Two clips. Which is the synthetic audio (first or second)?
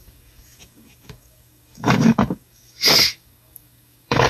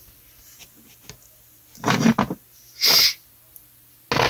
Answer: first